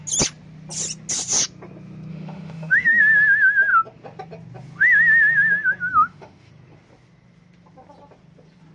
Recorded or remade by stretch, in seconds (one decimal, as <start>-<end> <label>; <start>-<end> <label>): 0.0-2.1 recorded; 2.1-3.0 remade; 3.0-5.9 recorded; 5.9-6.5 remade; 6.5-8.7 recorded